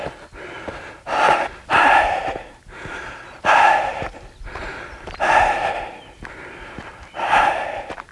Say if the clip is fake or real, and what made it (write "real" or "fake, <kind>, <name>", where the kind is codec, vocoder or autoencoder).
real